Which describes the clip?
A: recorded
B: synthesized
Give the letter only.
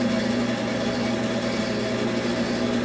A